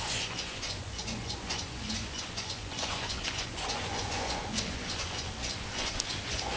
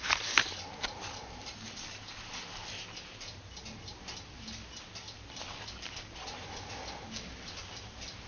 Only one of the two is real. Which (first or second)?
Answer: second